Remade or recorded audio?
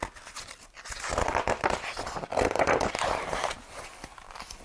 recorded